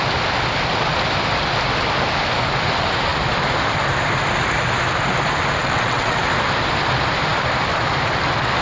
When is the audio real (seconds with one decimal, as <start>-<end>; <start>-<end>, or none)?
0.0-5.6; 6.2-8.6